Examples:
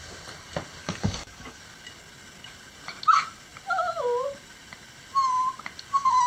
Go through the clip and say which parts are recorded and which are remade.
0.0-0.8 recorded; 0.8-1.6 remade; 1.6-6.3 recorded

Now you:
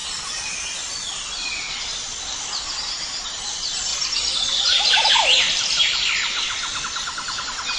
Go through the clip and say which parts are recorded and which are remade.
0.0-2.6 remade; 2.6-7.8 recorded

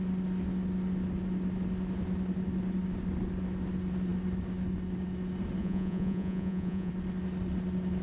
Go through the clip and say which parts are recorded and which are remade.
0.0-5.6 recorded; 5.6-6.9 remade; 6.9-8.0 recorded

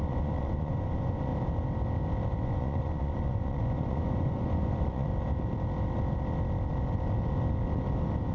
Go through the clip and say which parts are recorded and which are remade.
0.0-1.3 remade; 1.3-2.3 recorded; 2.3-5.1 remade; 5.1-8.3 recorded

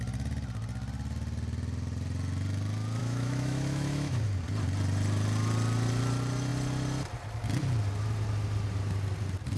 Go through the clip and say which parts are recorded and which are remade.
0.0-3.0 recorded; 3.0-4.2 remade; 4.2-9.6 recorded

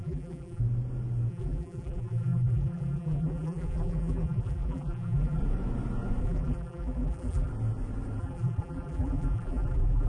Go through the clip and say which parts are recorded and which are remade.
0.0-0.6 remade; 0.6-1.3 recorded; 1.3-5.4 remade; 5.4-6.2 recorded; 6.2-7.5 remade; 7.5-8.2 recorded; 8.2-10.1 remade

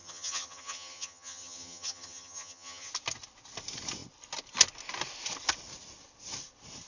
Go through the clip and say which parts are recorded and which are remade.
0.0-2.9 remade; 2.9-6.9 recorded